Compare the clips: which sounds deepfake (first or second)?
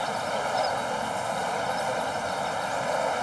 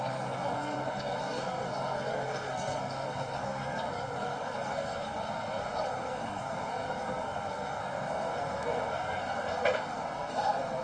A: second